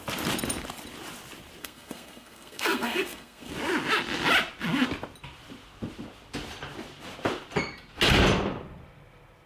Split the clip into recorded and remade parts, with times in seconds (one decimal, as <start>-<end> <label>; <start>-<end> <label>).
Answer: 0.0-1.6 recorded; 1.6-3.5 remade; 3.5-9.5 recorded